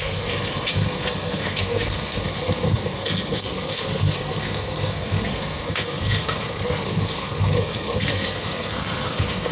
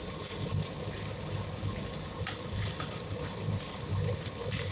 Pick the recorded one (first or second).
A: second